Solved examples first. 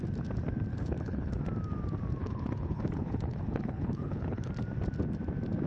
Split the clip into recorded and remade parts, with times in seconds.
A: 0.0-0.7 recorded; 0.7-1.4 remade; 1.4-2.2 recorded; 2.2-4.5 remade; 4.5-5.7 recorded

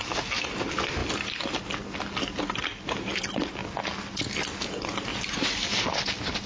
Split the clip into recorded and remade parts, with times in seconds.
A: 0.0-5.1 recorded; 5.1-5.8 remade; 5.8-6.5 recorded

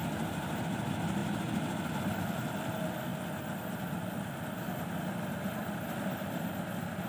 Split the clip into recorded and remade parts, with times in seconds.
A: 0.0-7.1 recorded

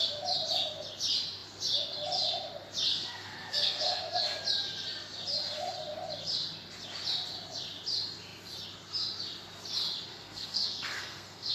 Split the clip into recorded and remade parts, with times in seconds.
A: 0.0-2.9 recorded; 2.9-4.2 remade; 4.2-10.1 recorded; 10.1-11.5 remade

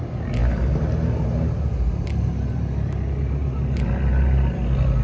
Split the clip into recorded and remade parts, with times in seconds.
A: 0.0-5.0 recorded

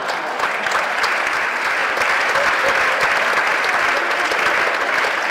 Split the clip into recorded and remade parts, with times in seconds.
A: 0.0-1.3 recorded; 1.3-1.8 remade; 1.8-5.3 recorded

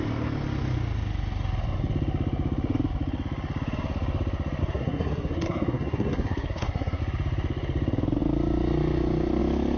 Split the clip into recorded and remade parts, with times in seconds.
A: 0.0-4.6 recorded; 4.6-7.0 remade; 7.0-9.8 recorded